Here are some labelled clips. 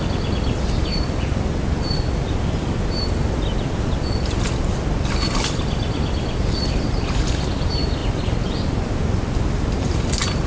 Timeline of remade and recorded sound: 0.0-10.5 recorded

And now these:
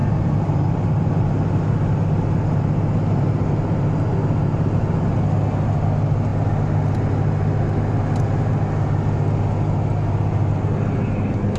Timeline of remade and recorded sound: 0.0-1.1 remade; 1.1-11.6 recorded

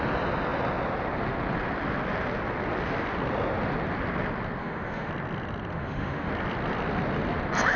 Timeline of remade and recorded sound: 0.0-4.6 recorded; 4.6-5.1 remade; 5.1-5.7 recorded; 5.7-6.3 remade; 6.3-7.8 recorded

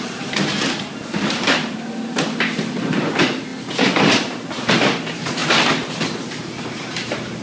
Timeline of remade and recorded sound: 0.0-3.5 remade; 3.5-4.1 recorded; 4.1-7.4 remade